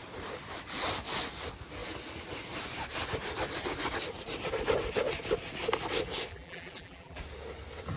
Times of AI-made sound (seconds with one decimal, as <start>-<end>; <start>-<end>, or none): 6.3-7.2